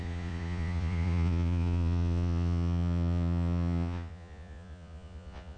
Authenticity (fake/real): fake